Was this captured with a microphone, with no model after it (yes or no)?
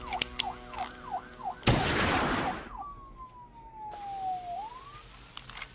yes